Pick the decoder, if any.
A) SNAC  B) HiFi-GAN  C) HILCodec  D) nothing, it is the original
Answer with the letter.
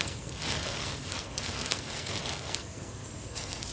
A